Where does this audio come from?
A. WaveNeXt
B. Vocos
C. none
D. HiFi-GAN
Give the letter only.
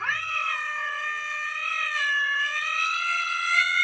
A